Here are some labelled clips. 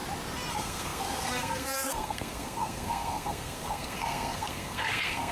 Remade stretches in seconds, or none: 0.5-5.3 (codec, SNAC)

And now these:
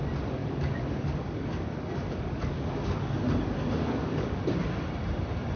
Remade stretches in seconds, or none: 0.4-3.3 (codec, DAC); 3.8-4.4

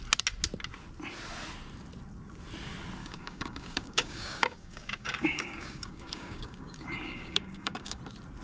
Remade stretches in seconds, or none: 3.0-8.0 (codec, DAC)

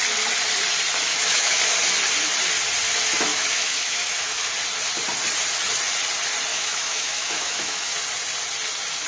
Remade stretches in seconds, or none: 1.1-1.6 (autoencoder, DAC-VAE); 3.3-4.5; 6.5-7.9